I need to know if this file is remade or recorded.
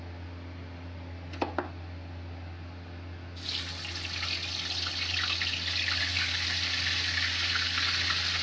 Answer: recorded